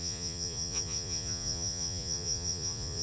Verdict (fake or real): fake